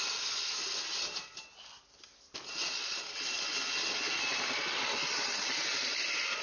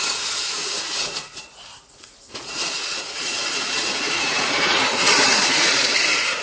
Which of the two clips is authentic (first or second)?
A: first